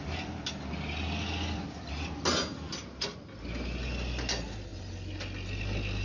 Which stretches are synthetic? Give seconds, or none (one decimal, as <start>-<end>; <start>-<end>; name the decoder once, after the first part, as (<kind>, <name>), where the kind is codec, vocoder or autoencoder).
none